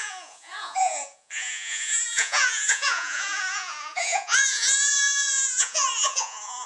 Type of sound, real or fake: fake